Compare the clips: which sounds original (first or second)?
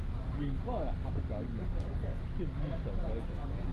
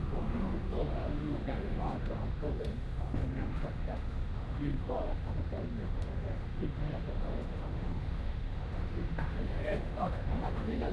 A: first